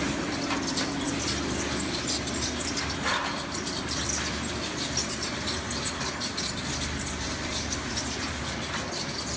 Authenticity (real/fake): fake